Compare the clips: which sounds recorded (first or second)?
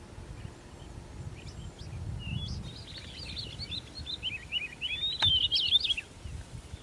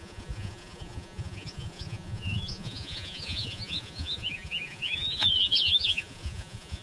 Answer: first